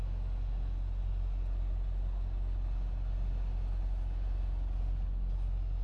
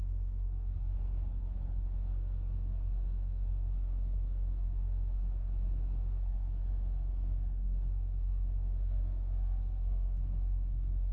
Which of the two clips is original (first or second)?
first